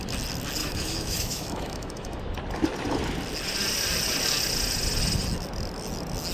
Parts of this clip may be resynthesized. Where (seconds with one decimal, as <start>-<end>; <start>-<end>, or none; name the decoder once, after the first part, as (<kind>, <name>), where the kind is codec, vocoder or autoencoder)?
0.6-2.2 (autoencoder, DAC-VAE)